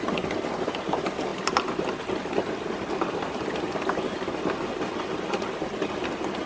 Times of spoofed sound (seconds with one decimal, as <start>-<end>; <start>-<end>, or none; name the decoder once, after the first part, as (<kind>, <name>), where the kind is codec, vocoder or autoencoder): none